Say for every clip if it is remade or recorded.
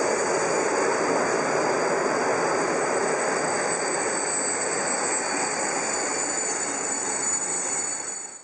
recorded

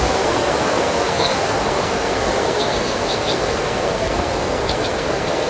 remade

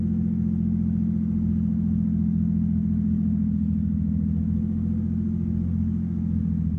recorded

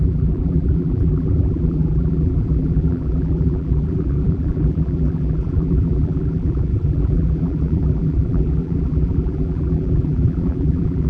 remade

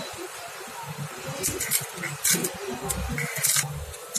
recorded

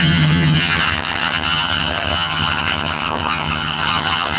remade